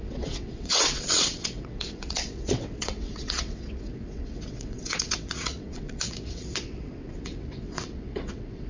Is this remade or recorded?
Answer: remade